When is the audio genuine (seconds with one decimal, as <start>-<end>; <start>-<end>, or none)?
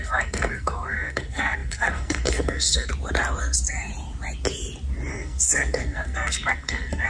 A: 2.9-3.4; 3.9-5.1